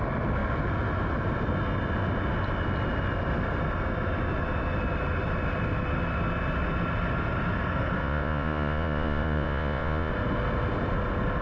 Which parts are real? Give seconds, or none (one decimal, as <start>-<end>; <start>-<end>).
0.0-8.0; 10.1-11.4